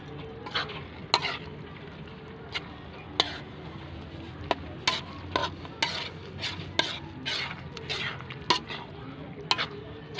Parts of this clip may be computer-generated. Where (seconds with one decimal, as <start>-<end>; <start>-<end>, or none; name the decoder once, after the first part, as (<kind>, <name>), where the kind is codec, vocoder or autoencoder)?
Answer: none